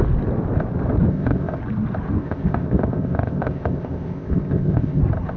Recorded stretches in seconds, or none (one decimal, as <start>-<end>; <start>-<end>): 0.0-1.1; 1.6-2.2; 5.0-5.4